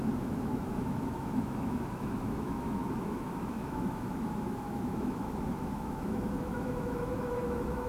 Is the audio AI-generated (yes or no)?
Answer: yes